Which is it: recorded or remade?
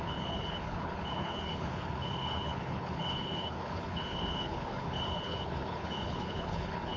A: remade